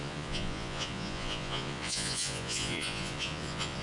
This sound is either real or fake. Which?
fake